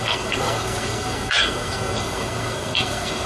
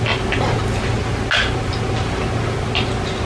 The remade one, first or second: first